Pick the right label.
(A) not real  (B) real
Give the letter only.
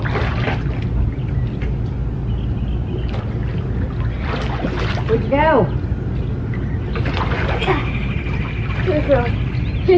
B